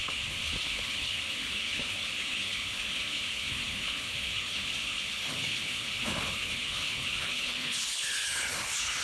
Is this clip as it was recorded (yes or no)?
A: no